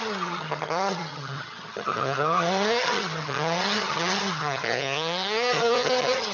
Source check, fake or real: fake